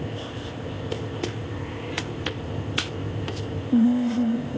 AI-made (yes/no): yes